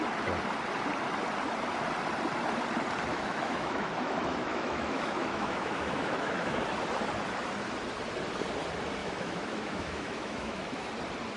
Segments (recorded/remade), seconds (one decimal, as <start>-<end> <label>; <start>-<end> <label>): 0.0-3.1 recorded; 3.1-6.6 remade; 6.6-9.0 recorded; 9.0-10.9 remade; 10.9-11.4 recorded